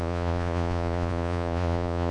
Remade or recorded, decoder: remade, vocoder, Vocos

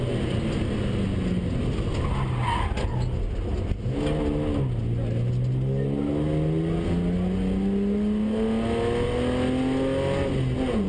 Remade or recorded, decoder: recorded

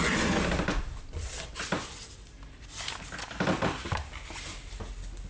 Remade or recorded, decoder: recorded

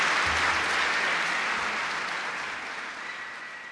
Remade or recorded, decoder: recorded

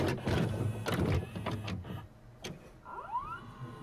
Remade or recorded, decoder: recorded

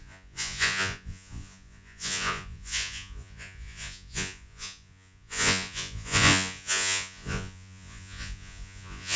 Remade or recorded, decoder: remade, vocoder, Vocos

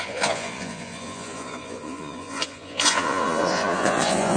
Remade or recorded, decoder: remade, vocoder, Vocos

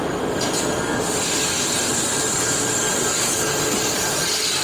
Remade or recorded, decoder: recorded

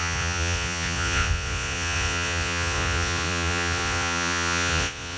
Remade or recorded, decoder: remade, vocoder, Vocos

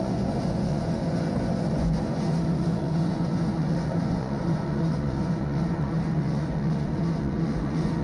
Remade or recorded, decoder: remade, vocoder, Vocos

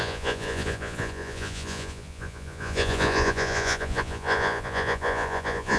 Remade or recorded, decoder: remade, vocoder, Vocos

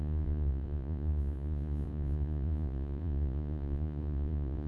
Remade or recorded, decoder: remade, vocoder, Vocos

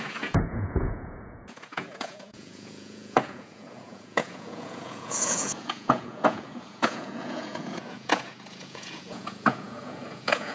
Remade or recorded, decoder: remade, vocoder, Vocos